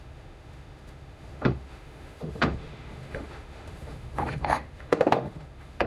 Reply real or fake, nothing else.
fake